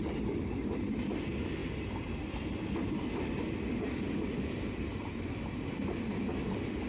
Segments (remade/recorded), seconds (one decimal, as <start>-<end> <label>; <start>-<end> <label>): 0.0-6.9 recorded